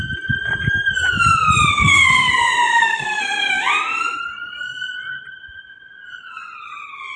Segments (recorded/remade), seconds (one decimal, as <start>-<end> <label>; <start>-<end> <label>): 0.0-1.7 recorded; 1.7-2.3 remade; 2.3-2.7 recorded; 2.7-3.5 remade; 3.5-7.2 recorded